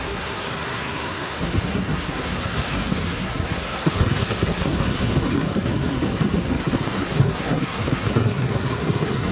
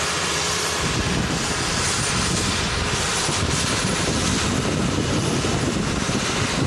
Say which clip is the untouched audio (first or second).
second